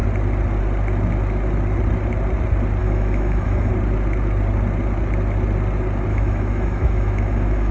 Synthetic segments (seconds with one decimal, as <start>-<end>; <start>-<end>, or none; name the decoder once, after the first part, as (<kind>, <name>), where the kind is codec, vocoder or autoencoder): 2.8-3.7 (autoencoder, DAC-VAE); 6.1-7.7